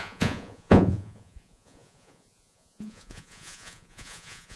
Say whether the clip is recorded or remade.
remade